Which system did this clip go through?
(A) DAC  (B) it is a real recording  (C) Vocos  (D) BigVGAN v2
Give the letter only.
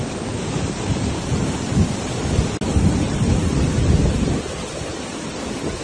B